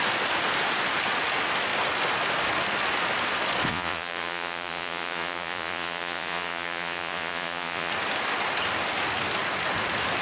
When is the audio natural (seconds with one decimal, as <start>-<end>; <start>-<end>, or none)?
0.0-3.7; 7.9-10.2